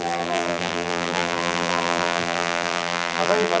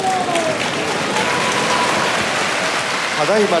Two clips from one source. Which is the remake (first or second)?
first